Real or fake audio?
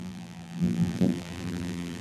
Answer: fake